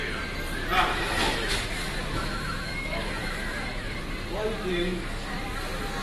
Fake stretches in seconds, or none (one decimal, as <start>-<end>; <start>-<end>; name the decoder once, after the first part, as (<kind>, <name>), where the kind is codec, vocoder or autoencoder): 0.9-4.0 (autoencoder, DAC-VAE); 4.7-5.3